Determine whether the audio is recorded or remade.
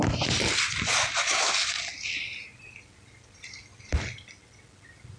recorded